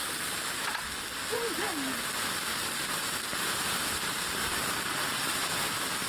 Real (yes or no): yes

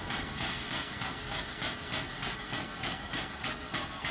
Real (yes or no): no